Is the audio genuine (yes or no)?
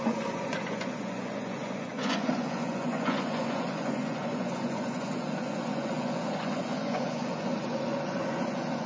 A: no